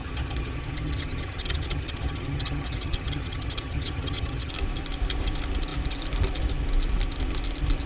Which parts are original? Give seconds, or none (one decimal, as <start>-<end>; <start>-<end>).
4.5-7.9